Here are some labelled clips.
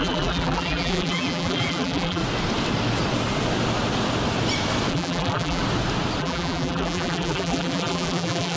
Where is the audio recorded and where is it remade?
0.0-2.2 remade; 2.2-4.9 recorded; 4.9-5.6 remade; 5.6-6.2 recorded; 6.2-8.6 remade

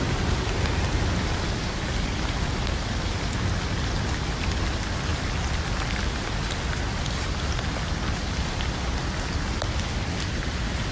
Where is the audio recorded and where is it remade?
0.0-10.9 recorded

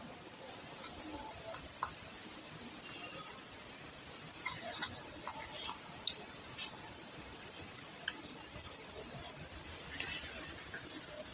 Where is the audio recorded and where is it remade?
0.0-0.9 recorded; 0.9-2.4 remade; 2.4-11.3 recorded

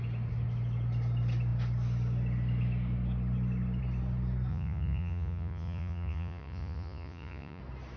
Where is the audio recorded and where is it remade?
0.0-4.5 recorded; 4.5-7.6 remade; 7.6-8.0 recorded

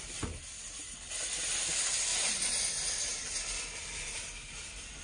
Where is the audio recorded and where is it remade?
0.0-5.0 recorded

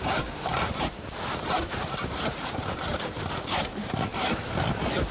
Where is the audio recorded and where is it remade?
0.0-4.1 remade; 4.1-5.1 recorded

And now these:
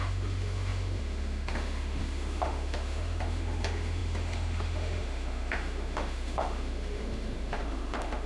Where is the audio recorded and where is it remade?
0.0-8.3 remade